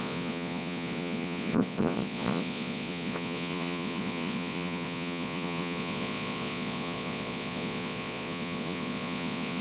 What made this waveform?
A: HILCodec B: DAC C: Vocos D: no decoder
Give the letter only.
C